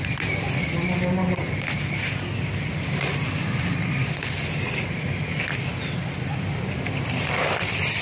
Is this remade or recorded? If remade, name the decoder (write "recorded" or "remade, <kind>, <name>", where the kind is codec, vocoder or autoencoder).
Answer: remade, vocoder, BigVGAN v2